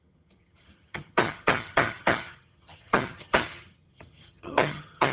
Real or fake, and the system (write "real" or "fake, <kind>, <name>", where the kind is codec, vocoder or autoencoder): fake, vocoder, HiFi-GAN